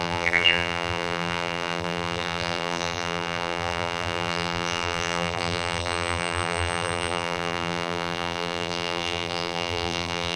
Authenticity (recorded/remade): remade